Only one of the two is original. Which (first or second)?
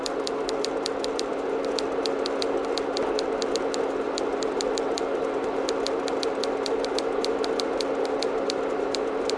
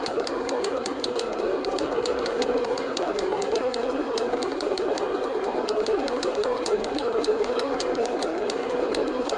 first